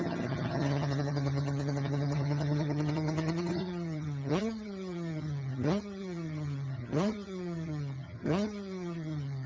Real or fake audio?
fake